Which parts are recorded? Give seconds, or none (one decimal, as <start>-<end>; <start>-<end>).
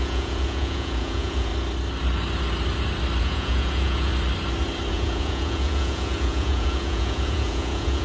1.5-3.2; 4.1-4.9